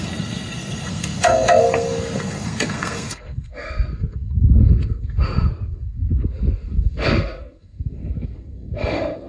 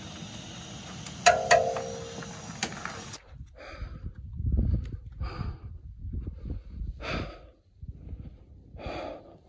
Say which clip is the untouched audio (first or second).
second